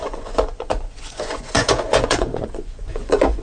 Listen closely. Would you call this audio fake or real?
fake